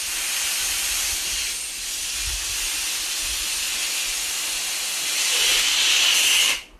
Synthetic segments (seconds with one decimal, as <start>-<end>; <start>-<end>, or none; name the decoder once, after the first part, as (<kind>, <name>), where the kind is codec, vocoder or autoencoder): none